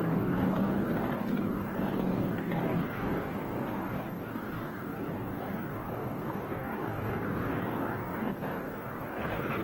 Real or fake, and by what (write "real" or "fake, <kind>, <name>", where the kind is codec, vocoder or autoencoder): fake, codec, DAC